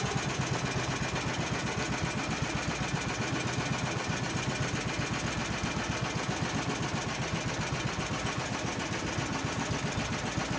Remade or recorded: recorded